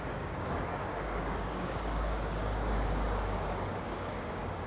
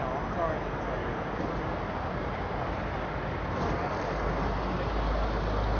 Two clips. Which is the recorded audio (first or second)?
second